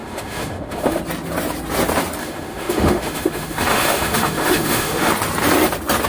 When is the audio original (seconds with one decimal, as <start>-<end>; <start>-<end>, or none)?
1.0-2.2; 5.1-6.1